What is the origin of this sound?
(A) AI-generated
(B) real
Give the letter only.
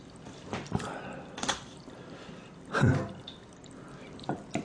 B